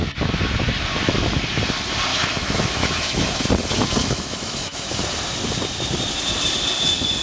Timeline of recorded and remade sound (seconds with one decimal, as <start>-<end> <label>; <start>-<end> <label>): 0.0-2.1 recorded; 2.1-3.4 remade; 3.4-4.0 recorded; 4.0-5.0 remade; 5.0-7.2 recorded